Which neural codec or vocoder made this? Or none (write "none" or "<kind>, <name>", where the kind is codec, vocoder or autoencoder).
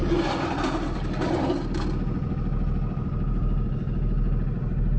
none